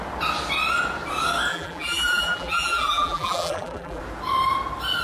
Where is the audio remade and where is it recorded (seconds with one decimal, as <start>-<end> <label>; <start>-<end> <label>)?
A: 0.0-1.5 recorded; 1.5-4.0 remade; 4.0-5.0 recorded